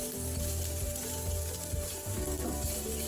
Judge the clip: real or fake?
fake